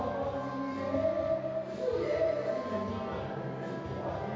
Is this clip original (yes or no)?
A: yes